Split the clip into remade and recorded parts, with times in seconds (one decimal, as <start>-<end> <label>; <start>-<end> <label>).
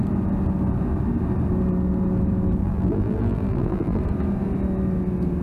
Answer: 0.0-2.6 recorded; 2.6-4.0 remade; 4.0-5.4 recorded